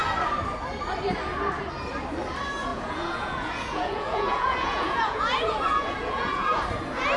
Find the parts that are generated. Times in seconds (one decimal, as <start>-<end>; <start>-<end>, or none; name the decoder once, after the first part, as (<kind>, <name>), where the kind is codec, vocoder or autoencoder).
2.7-6.6 (vocoder, Vocos)